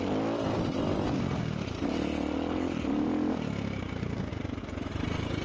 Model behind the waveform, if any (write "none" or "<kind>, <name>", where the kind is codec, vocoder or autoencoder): none